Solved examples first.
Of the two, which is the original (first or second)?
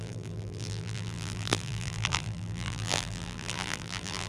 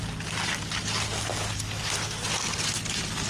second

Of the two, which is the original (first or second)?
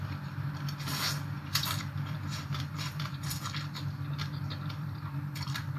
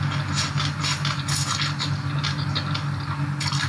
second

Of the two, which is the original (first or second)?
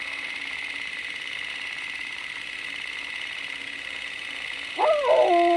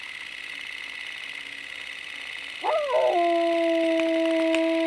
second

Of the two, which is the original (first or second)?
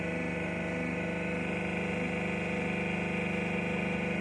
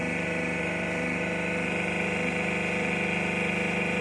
first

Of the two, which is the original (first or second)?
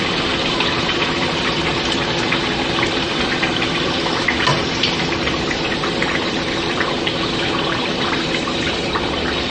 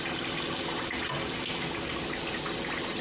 second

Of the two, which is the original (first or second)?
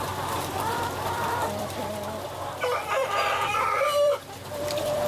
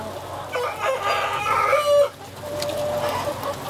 second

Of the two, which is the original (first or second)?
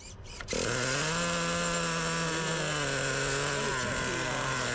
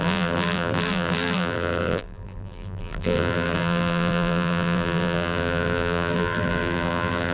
first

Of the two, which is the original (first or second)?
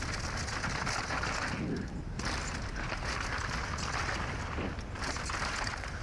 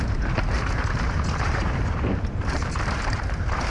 first